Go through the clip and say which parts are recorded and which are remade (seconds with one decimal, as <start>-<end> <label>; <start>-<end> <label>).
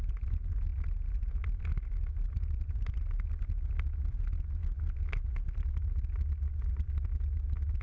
0.0-7.8 recorded